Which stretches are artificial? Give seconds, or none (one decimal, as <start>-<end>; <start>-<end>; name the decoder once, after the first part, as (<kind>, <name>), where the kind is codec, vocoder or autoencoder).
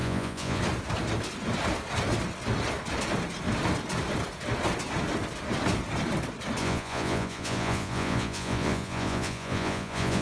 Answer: 0.0-0.6 (vocoder, Vocos); 6.6-10.2